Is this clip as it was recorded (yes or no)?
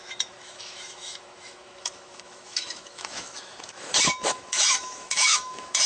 no